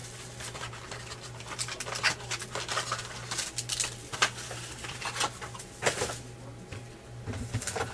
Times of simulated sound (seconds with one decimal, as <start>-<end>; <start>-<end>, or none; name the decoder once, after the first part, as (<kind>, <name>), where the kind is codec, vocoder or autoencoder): none